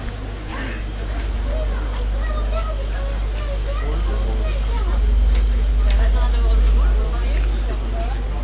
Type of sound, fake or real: real